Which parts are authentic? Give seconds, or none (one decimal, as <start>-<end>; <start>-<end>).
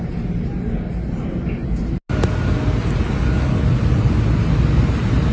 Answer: 1.6-4.8